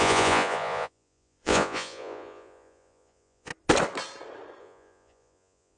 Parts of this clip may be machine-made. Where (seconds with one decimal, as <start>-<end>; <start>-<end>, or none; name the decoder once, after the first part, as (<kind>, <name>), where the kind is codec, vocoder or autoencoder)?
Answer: 0.0-3.5 (vocoder, Vocos); 4.6-5.8